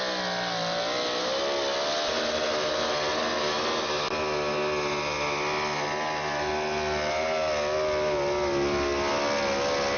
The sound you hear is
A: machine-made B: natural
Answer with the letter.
B